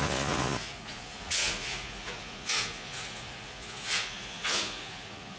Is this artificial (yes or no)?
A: yes